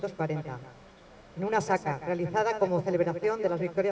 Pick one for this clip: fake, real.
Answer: fake